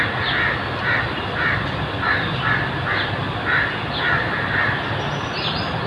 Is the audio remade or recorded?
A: recorded